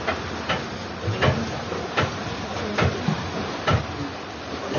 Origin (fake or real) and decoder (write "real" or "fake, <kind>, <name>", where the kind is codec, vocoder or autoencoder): real